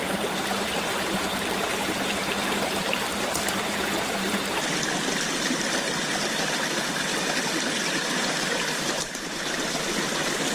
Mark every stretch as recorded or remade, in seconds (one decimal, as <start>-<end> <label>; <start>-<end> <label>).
0.0-4.6 remade; 4.6-7.1 recorded; 7.1-9.8 remade; 9.8-10.5 recorded